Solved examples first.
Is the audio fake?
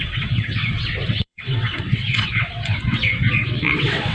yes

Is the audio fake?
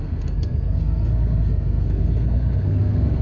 yes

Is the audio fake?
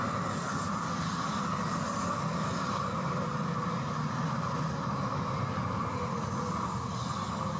no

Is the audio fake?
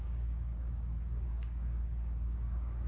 yes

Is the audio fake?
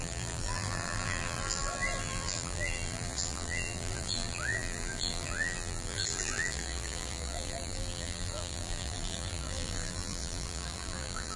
yes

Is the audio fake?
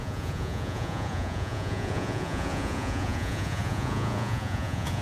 yes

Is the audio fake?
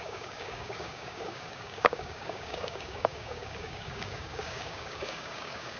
yes